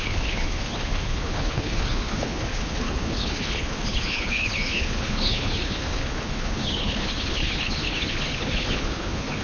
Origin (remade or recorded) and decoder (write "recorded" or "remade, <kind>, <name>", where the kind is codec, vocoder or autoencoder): remade, codec, HILCodec